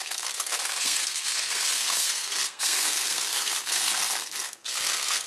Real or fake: fake